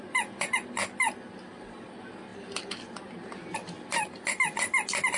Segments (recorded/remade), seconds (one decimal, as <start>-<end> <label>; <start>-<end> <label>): 0.0-5.2 recorded